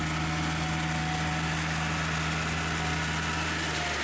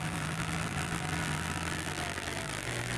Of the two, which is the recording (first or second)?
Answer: first